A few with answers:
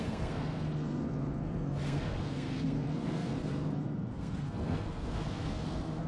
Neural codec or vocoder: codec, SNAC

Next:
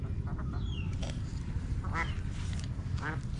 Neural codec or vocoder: none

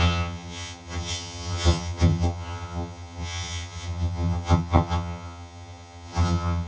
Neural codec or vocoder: vocoder, HiFi-GAN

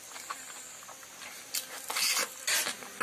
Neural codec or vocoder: none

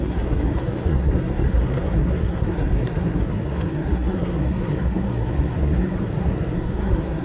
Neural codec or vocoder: codec, SNAC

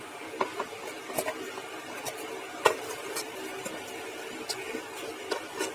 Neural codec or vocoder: none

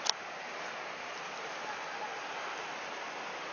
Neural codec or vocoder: none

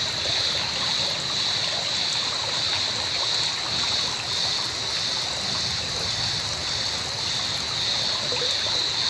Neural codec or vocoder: none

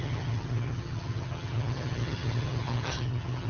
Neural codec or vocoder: vocoder, HiFi-GAN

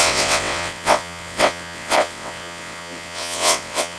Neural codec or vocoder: vocoder, WaveNeXt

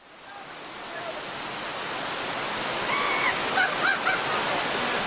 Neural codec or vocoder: none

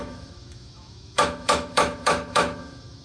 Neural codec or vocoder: autoencoder, DAC-VAE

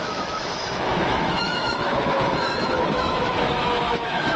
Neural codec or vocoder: autoencoder, DAC-VAE